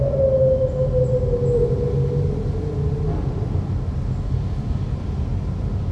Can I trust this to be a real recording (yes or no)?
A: yes